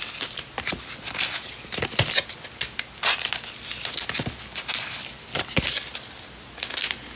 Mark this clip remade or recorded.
recorded